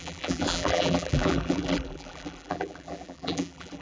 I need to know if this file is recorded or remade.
remade